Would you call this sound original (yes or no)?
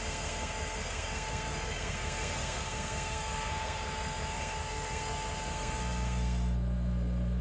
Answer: no